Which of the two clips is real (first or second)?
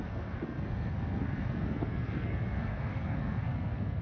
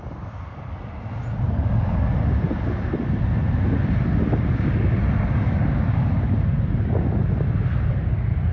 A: second